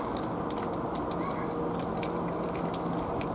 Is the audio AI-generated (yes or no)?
no